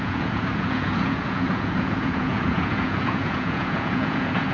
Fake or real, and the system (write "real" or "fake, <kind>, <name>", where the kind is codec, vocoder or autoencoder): fake, vocoder, Vocos